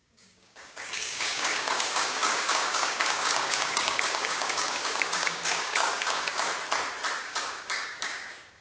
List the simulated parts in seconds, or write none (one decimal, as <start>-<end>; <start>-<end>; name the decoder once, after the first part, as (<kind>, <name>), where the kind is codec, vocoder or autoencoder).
0.0-6.5 (codec, DAC); 7.2-8.6